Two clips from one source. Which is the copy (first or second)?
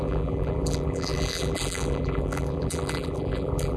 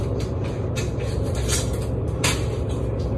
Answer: first